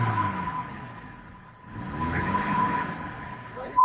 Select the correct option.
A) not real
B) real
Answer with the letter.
A